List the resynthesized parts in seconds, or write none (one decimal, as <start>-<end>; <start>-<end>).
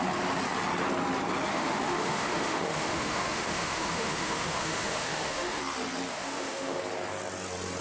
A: 1.5-5.6; 6.1-6.8